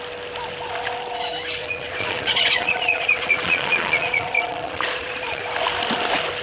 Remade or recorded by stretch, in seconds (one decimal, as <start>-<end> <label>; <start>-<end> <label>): 0.0-1.6 recorded; 1.6-5.4 remade; 5.4-6.4 recorded